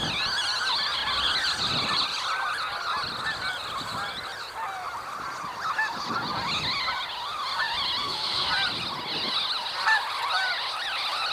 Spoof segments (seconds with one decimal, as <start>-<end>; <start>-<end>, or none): 8.0-8.5